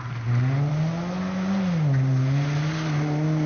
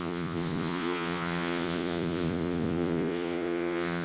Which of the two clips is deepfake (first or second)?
second